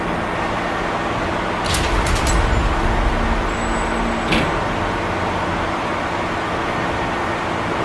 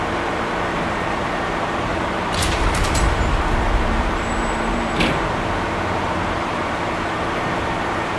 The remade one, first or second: second